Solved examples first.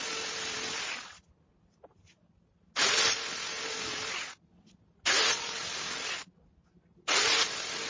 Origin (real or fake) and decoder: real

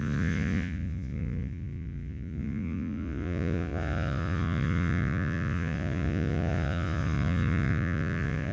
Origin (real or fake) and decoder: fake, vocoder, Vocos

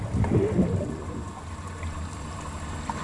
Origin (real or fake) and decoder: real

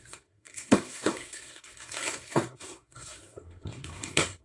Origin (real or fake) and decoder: fake, codec, SNAC